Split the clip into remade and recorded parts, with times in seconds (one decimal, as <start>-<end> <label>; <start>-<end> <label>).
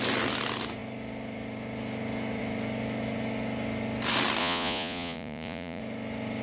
0.0-4.4 recorded; 4.4-5.8 remade; 5.8-6.4 recorded